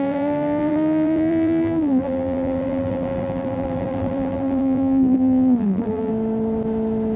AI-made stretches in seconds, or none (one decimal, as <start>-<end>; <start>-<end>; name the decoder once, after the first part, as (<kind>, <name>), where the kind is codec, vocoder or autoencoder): 0.0-6.1 (vocoder, BigVGAN v2)

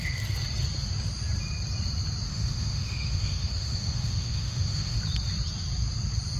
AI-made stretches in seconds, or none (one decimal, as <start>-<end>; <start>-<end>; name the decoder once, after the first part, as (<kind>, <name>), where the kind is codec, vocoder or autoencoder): 2.3-5.0 (autoencoder, DAC-VAE)

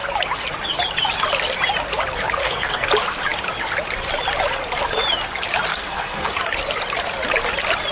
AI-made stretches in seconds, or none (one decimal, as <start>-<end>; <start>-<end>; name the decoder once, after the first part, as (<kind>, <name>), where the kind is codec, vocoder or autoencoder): 2.4-2.9 (codec, SNAC); 5.7-6.3

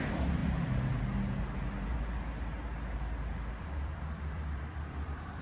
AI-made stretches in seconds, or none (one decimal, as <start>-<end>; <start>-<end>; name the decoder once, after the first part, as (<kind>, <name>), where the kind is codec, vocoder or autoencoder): 0.0-0.4 (vocoder, BigVGAN v2); 3.6-5.4

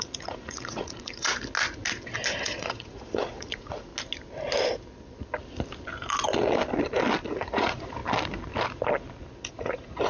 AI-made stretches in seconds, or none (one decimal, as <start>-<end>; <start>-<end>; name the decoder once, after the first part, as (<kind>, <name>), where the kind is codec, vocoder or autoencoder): 0.0-1.3 (vocoder, Vocos); 2.4-3.9; 7.3-8.0; 9.5-10.1